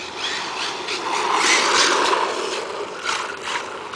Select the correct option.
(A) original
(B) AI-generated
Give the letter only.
A